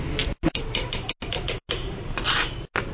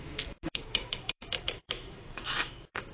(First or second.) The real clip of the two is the first